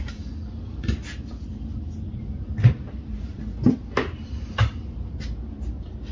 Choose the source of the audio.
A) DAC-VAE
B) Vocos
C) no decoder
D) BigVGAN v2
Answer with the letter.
C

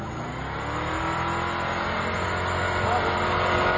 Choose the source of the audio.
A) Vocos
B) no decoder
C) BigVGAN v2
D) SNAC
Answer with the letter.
B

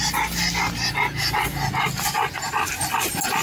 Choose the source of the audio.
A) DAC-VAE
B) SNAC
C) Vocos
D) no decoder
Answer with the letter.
D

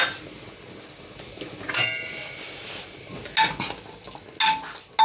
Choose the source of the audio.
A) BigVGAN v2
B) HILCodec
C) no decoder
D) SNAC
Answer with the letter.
C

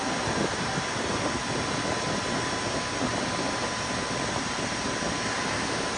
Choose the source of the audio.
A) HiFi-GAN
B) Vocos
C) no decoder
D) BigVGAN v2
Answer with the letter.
C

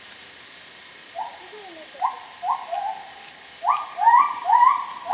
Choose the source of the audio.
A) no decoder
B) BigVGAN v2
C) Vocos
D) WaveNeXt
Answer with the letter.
A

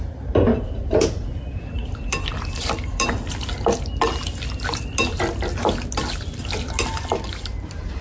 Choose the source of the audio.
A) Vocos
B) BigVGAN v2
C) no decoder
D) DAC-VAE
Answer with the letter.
C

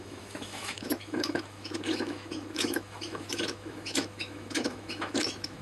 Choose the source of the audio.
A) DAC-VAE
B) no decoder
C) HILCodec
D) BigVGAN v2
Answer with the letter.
A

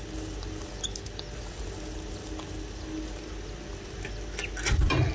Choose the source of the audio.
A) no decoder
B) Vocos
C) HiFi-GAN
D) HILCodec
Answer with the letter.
A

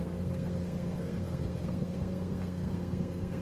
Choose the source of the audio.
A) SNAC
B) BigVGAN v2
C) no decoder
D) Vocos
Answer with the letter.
A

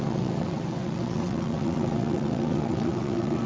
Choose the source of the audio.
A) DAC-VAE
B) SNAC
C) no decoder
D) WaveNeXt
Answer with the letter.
D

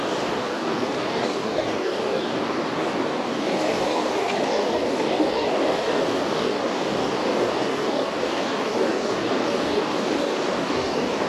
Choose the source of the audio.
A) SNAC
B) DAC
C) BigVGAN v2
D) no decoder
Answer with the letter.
B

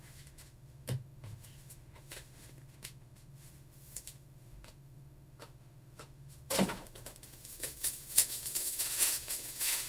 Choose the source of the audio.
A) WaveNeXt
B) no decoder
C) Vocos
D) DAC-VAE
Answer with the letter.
D